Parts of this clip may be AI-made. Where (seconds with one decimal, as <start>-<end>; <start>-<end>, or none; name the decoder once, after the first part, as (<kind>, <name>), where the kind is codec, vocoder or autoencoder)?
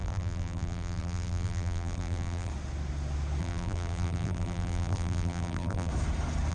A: 0.0-2.5 (vocoder, BigVGAN v2); 3.4-5.9